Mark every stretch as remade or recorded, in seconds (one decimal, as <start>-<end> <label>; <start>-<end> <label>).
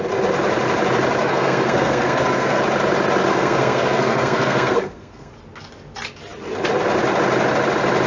0.0-1.2 recorded; 1.2-2.6 remade; 2.6-3.3 recorded; 3.3-5.3 remade; 5.3-8.1 recorded